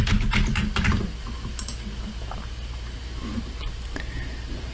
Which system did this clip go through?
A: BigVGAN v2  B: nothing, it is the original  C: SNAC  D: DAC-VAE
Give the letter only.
A